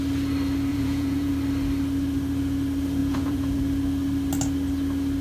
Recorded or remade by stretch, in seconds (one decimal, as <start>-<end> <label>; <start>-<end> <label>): 0.0-0.7 recorded; 0.7-1.3 remade; 1.3-3.0 recorded; 3.0-3.6 remade; 3.6-5.2 recorded